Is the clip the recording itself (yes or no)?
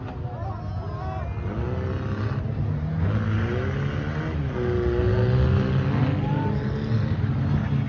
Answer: yes